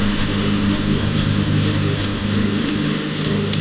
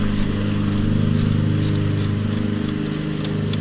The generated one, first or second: first